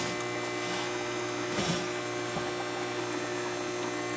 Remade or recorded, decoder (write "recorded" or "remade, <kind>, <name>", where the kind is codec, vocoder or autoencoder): recorded